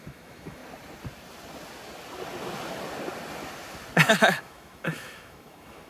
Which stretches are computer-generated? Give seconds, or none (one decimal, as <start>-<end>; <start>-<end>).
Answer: 0.0-0.6; 4.1-5.9